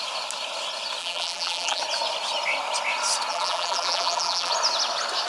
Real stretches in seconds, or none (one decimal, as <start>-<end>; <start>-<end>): 0.0-1.0; 1.8-3.3; 4.5-5.3